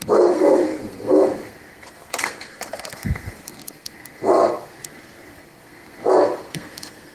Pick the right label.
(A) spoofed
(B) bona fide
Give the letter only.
A